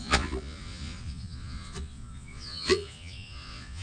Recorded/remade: remade